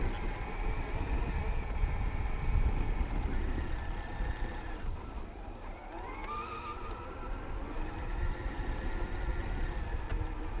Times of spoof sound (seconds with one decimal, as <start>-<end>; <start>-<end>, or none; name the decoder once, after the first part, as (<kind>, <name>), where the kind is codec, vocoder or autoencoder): none

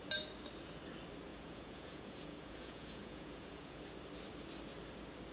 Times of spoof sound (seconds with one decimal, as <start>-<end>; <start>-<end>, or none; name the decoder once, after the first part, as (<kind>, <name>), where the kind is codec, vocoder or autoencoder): 1.3-3.8 (vocoder, Vocos)

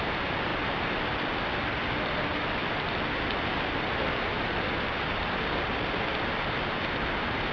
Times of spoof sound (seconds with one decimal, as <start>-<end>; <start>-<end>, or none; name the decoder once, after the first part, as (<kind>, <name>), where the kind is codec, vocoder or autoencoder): none

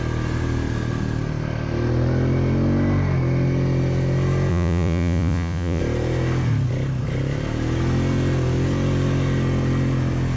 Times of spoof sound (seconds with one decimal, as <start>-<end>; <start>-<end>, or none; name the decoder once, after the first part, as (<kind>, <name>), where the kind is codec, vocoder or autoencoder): 4.5-5.8 (vocoder, Vocos)

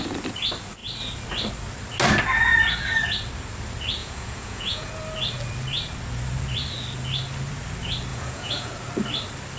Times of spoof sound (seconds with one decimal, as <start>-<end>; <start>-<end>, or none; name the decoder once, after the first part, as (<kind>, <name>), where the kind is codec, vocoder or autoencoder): 4.0-4.9 (vocoder, Vocos); 8.1-8.7

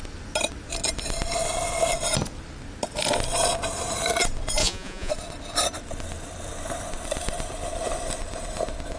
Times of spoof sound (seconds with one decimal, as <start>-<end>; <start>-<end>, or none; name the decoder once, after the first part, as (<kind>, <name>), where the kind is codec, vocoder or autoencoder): 4.6-5.1 (vocoder, Vocos)

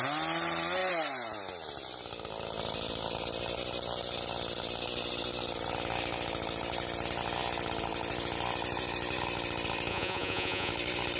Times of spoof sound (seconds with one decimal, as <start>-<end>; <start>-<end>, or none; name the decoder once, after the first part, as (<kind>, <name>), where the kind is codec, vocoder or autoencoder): 9.9-10.7 (vocoder, Vocos)